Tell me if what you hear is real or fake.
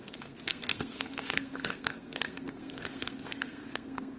fake